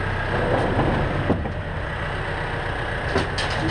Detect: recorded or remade recorded